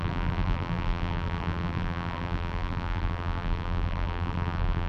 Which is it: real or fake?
fake